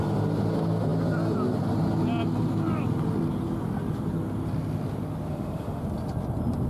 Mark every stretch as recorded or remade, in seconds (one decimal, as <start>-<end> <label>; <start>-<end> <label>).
0.0-5.3 recorded; 5.3-5.8 remade; 5.8-6.7 recorded